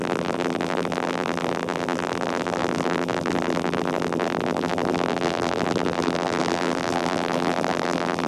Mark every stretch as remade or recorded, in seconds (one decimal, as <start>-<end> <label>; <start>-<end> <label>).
0.0-8.3 remade